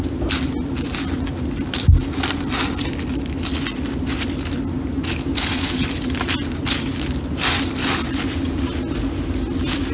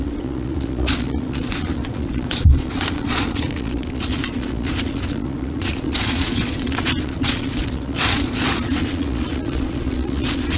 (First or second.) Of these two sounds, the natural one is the first